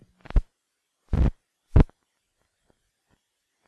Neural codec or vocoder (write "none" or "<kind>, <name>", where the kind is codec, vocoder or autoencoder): none